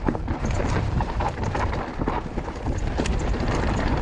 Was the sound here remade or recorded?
remade